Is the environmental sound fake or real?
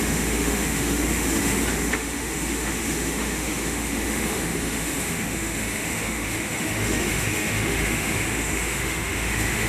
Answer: fake